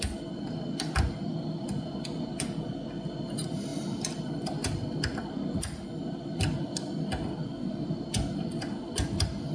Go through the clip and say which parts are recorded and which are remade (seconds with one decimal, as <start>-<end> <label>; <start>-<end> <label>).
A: 0.0-9.5 recorded